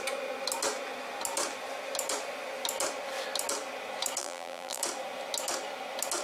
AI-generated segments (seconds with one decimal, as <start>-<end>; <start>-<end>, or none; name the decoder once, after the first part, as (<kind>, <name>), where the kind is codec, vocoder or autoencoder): 4.2-4.8 (vocoder, BigVGAN v2)